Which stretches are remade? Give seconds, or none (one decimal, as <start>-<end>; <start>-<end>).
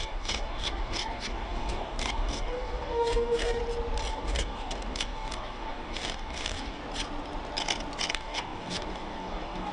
0.0-3.6; 4.1-6.8; 8.1-9.7